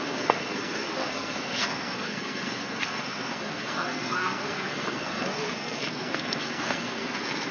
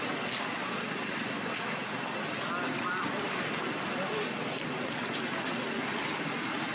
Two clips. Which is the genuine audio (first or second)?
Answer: second